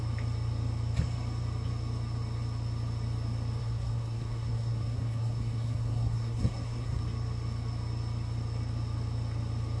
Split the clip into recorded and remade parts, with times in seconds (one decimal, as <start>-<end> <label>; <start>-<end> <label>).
0.0-3.6 recorded; 3.6-7.0 remade; 7.0-9.8 recorded